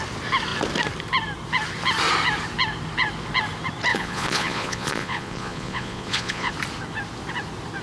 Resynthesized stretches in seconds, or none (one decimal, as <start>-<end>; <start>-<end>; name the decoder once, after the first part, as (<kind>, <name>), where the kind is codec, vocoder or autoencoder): 3.9-6.5 (vocoder, Vocos)

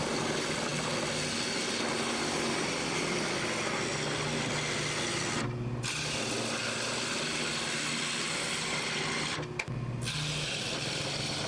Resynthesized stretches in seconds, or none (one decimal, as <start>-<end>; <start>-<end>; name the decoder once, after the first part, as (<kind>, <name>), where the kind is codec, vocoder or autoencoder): none

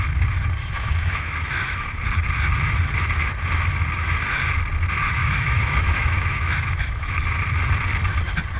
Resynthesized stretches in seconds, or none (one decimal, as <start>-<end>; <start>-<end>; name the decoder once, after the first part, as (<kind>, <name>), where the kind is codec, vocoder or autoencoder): 0.6-2.0 (autoencoder, DAC-VAE); 5.2-7.1

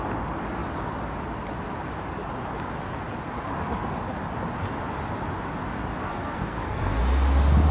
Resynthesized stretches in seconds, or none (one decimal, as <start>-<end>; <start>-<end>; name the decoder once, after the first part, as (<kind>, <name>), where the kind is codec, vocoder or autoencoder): 6.0-7.0 (codec, SNAC)

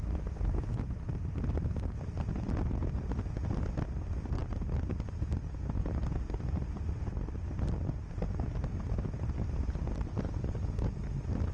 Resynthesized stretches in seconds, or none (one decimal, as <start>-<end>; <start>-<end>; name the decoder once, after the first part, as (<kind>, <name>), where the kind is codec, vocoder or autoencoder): none

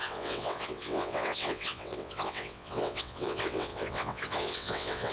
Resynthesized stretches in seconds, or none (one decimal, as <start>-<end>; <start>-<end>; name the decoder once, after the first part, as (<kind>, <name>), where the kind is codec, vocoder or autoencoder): 0.0-5.1 (vocoder, WaveNeXt)

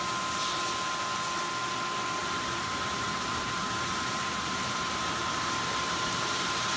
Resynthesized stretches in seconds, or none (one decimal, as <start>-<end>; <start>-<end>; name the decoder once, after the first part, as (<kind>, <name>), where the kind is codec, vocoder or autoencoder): 2.2-5.2 (vocoder, BigVGAN v2)

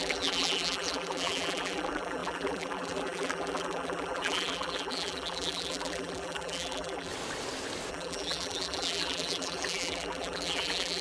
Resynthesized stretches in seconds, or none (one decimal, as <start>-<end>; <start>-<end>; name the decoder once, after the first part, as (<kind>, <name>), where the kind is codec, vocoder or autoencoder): 0.0-7.1 (vocoder, BigVGAN v2); 7.9-11.0